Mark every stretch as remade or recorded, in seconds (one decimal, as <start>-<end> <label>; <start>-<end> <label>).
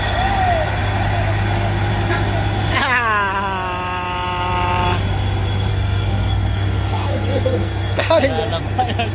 0.0-5.7 recorded; 5.7-8.2 remade; 8.2-9.1 recorded